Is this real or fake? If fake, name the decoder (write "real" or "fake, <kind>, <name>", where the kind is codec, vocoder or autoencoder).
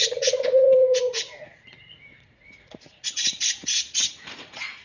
fake, vocoder, Vocos